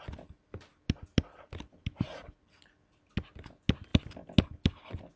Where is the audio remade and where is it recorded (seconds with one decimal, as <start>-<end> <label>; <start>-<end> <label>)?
0.0-5.2 recorded